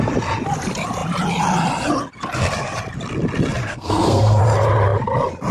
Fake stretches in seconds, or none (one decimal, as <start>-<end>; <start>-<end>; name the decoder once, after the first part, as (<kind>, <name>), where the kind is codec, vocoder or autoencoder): 3.6-4.4 (codec, SNAC)